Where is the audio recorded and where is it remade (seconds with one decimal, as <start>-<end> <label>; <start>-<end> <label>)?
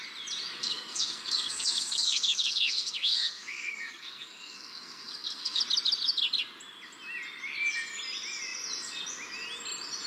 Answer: 0.0-0.6 recorded; 0.6-5.6 remade; 5.6-10.1 recorded